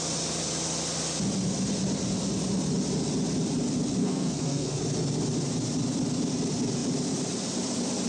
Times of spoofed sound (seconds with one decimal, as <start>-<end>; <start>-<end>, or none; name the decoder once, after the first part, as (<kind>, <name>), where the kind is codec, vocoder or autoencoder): 4.0-4.8 (codec, SNAC)